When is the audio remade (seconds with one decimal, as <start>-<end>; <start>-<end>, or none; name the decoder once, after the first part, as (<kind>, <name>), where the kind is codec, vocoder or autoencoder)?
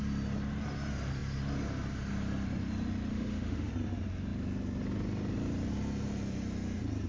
3.1-3.7 (autoencoder, DAC-VAE)